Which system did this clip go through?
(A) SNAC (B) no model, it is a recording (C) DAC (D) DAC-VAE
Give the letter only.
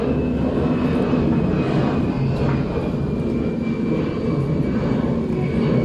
B